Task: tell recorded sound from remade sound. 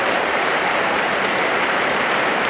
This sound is remade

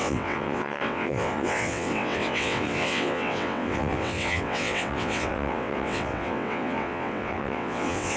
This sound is remade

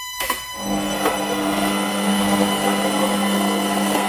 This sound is remade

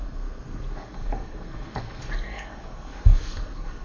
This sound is remade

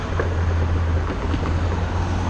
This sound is recorded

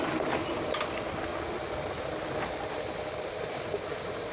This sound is recorded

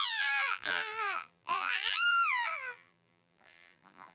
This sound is remade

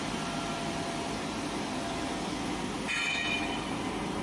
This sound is remade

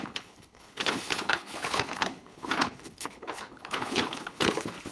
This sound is remade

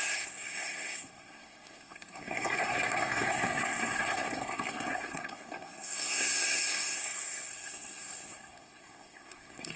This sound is remade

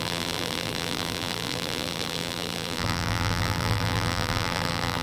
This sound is remade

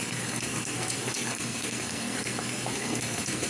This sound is remade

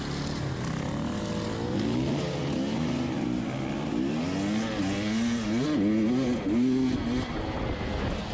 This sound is recorded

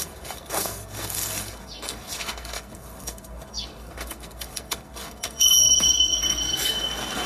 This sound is remade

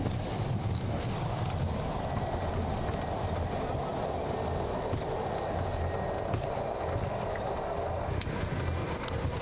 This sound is recorded